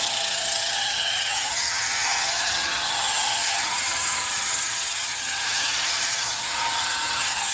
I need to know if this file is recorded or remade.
remade